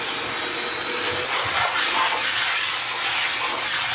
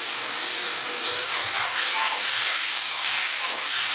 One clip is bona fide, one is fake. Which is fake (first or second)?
second